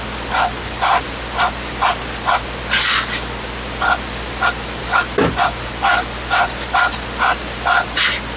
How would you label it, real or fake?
real